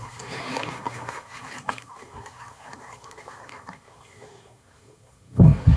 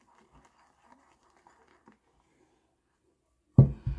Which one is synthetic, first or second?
first